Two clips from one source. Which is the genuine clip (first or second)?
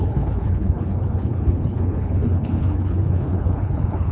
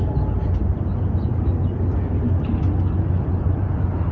second